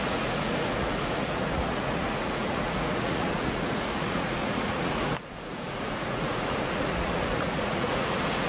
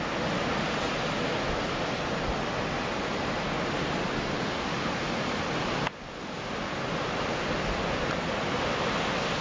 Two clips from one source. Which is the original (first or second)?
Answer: second